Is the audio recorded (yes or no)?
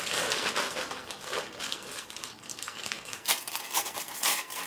no